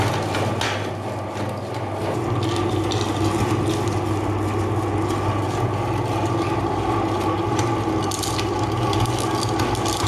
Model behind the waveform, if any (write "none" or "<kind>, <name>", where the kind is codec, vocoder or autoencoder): none